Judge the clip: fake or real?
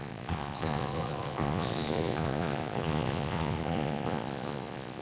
fake